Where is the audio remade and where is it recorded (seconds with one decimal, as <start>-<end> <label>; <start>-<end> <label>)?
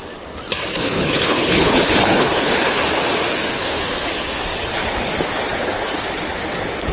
0.0-0.7 recorded; 0.7-2.8 remade; 2.8-3.5 recorded; 3.5-4.1 remade; 4.1-6.9 recorded